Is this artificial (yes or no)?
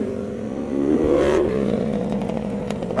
yes